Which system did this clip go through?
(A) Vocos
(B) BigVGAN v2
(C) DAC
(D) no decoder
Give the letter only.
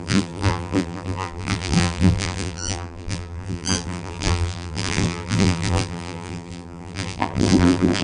B